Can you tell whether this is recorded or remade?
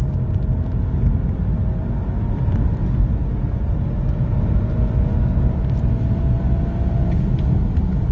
recorded